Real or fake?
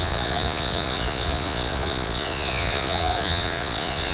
fake